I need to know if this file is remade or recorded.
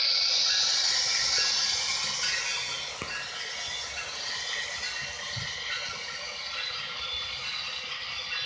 recorded